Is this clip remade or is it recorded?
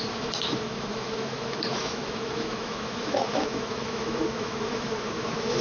remade